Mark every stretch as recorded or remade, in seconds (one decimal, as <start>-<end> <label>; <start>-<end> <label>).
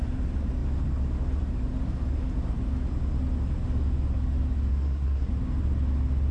0.0-4.7 recorded; 4.7-5.3 remade; 5.3-6.3 recorded